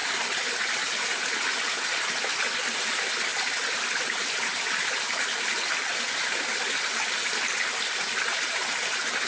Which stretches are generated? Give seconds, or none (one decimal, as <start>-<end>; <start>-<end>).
none